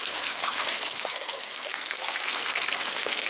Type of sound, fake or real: fake